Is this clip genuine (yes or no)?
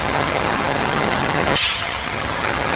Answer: no